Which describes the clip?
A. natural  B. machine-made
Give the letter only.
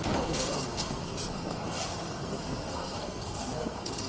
B